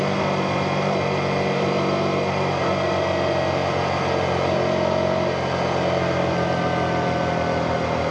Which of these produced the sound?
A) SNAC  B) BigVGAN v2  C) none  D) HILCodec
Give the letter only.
C